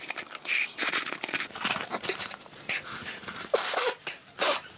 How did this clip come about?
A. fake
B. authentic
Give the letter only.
B